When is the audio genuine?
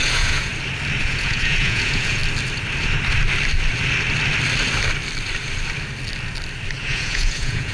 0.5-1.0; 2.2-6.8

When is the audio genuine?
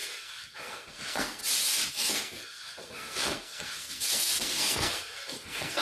1.4-1.9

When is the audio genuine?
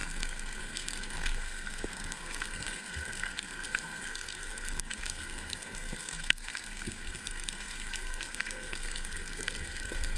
none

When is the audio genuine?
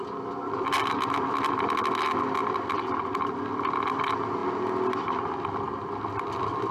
0.0-2.4; 3.0-6.7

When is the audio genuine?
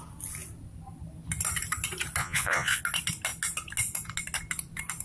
0.0-2.2; 2.8-5.0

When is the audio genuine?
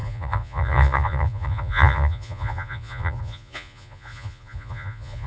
none